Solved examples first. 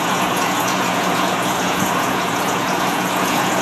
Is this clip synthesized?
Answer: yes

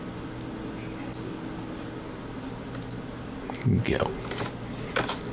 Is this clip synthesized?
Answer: no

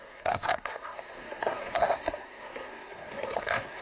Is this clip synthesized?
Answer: yes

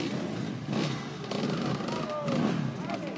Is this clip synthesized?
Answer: no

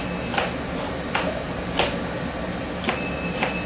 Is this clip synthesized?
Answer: no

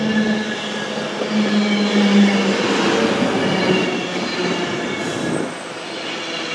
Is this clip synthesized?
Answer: no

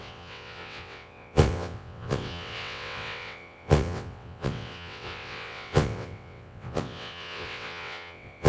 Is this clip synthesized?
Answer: yes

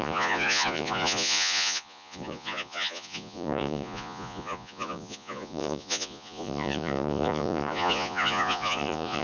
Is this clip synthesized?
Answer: yes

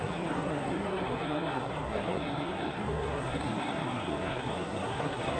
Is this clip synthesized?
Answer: yes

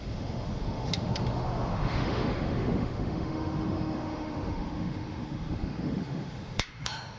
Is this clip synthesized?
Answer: yes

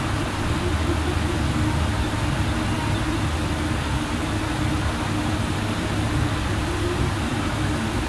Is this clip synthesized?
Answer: no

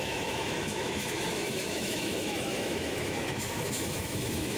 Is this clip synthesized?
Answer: yes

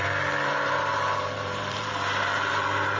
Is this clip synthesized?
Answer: yes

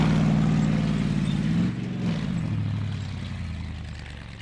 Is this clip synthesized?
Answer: no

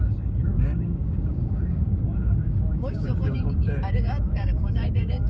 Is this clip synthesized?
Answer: yes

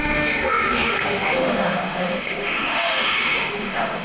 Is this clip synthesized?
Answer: yes